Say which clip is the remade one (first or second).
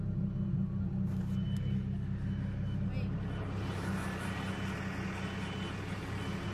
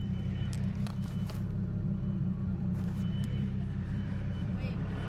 second